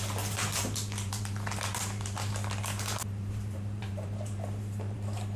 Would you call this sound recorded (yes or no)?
no